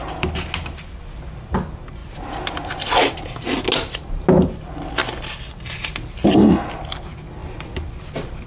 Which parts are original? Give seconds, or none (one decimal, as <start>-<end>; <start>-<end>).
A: 0.0-8.5